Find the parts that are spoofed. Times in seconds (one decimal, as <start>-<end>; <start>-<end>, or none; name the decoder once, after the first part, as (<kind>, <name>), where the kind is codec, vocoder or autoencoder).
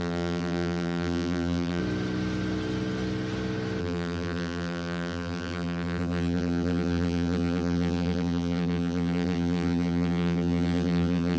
0.0-1.8 (vocoder, BigVGAN v2); 3.8-11.4